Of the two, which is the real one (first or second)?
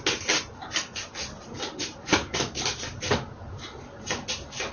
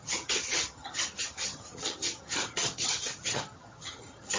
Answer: first